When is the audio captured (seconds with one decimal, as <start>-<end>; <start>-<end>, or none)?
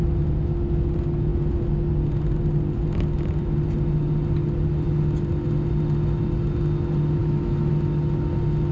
0.0-7.2; 7.7-8.7